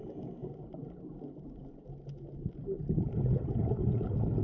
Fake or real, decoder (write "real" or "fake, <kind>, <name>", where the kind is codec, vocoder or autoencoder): real